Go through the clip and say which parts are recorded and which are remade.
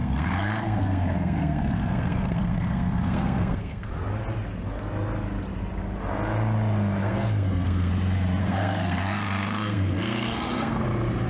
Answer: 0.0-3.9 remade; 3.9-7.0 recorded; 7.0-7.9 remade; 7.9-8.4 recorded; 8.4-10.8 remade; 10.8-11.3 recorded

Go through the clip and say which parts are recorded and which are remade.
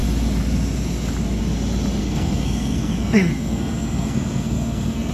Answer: 0.0-2.0 recorded; 2.0-5.1 remade